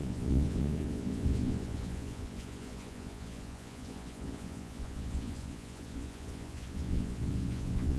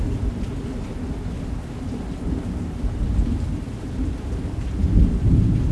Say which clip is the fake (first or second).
first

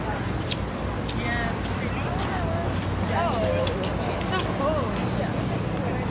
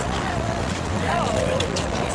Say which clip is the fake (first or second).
second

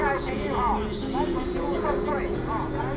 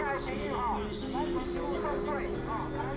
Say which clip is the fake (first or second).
first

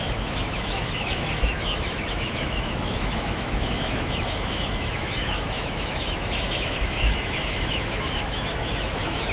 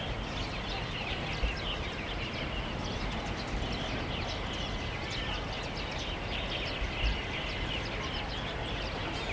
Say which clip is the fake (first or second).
first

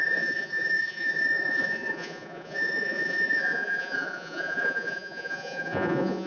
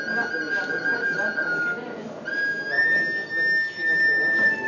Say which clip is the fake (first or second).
first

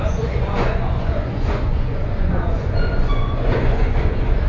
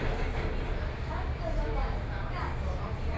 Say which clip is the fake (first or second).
first